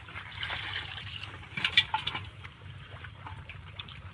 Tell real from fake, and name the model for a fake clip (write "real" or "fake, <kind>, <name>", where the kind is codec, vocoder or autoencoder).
fake, vocoder, BigVGAN v2